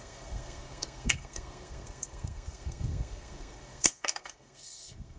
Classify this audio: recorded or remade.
remade